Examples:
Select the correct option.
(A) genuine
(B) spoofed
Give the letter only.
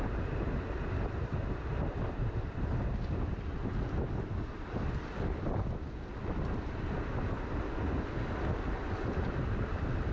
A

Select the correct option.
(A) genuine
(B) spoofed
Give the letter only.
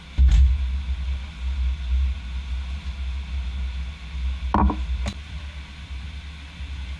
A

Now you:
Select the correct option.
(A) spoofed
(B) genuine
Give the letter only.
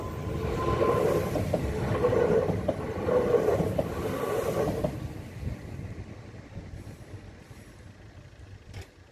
B